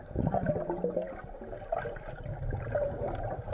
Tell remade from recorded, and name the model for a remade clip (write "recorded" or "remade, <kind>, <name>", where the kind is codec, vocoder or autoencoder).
recorded